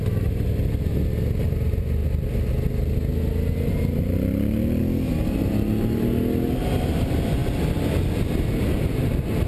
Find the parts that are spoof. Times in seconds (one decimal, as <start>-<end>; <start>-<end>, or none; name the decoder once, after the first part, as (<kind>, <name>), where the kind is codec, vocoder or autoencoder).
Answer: none